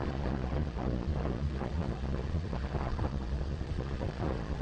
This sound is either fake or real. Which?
fake